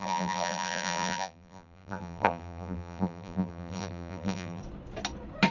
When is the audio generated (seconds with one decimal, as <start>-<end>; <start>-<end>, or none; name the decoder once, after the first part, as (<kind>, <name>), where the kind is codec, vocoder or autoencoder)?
0.0-4.6 (vocoder, BigVGAN v2)